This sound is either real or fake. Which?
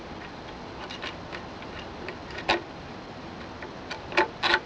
real